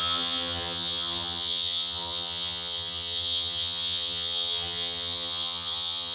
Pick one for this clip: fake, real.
fake